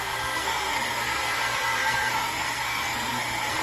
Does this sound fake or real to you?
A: fake